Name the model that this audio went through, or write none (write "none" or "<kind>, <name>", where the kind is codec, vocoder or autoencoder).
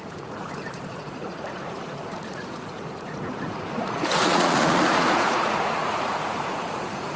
vocoder, Vocos